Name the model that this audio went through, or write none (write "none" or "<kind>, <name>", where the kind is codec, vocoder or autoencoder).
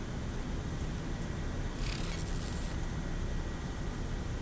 none